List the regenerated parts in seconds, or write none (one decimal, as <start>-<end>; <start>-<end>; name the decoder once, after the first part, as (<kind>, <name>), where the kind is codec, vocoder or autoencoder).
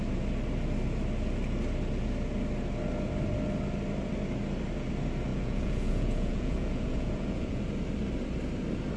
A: 5.3-7.6 (vocoder, Vocos)